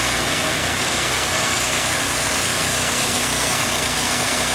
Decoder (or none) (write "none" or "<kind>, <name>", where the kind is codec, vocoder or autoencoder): codec, SNAC